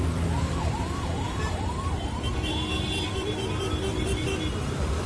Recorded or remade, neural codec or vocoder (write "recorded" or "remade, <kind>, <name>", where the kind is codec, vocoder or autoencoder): remade, vocoder, BigVGAN v2